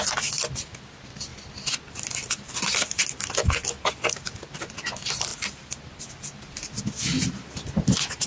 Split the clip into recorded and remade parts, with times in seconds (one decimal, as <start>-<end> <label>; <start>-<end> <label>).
0.0-8.3 recorded